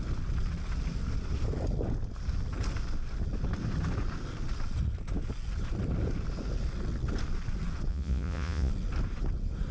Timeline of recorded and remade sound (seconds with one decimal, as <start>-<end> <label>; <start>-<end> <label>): 0.0-7.9 recorded; 7.9-8.7 remade; 8.7-9.7 recorded